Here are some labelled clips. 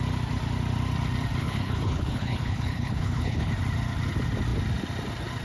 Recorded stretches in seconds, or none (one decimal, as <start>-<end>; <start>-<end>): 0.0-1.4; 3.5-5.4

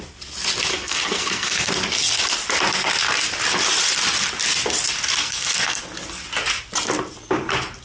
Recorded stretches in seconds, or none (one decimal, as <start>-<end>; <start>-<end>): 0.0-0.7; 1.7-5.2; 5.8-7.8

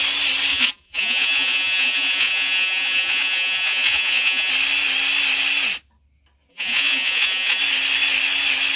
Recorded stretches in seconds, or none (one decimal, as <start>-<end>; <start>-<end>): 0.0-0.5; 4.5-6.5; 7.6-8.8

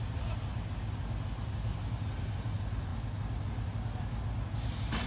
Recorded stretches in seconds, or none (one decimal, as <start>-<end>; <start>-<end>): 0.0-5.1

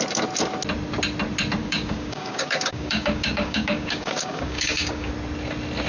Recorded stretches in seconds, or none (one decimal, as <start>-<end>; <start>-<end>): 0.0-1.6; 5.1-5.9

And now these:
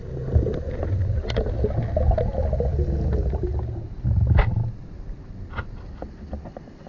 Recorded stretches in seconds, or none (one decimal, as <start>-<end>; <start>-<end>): 0.0-6.9

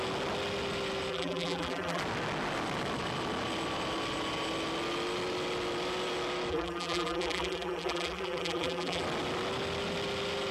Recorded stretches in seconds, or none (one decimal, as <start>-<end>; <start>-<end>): 0.0-1.1; 2.0-6.5; 9.0-10.5